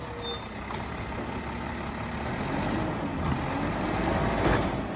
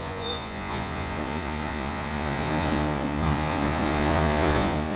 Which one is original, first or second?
first